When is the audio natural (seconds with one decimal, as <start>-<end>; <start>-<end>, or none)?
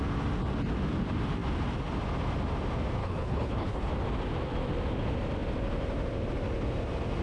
0.0-3.0; 3.9-7.2